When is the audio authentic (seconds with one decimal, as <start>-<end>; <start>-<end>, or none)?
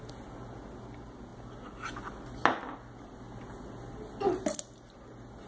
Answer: 0.0-5.5